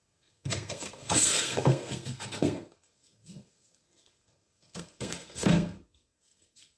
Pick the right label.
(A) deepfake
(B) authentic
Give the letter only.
A